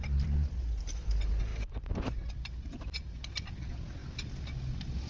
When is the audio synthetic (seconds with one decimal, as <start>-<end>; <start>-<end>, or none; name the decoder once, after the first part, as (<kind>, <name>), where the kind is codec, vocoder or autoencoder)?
none